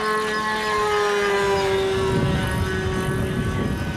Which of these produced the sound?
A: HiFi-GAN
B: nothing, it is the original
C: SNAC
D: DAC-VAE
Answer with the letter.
B